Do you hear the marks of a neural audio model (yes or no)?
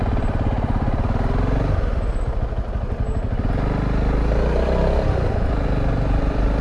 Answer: no